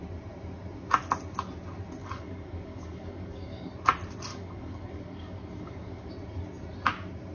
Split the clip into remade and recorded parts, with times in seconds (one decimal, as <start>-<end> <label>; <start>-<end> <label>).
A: 0.0-2.0 recorded; 2.0-3.7 remade; 3.7-4.3 recorded; 4.3-6.1 remade; 6.1-7.3 recorded